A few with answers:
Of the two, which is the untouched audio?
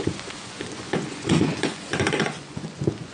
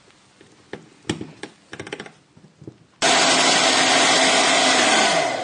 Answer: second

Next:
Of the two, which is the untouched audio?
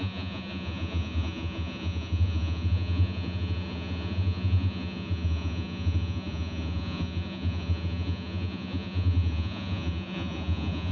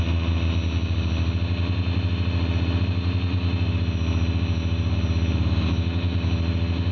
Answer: second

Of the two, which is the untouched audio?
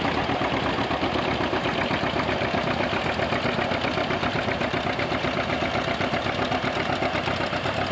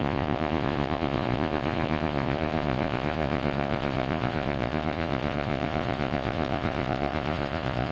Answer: first